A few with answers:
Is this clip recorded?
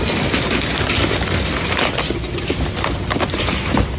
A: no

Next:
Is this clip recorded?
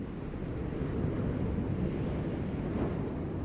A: yes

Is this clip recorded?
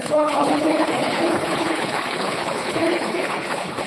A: no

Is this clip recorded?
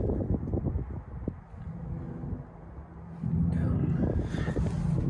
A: yes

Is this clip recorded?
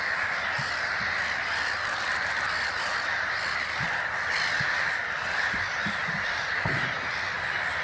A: no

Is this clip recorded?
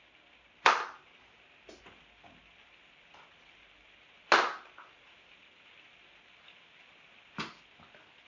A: yes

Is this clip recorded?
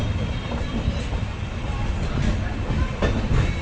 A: no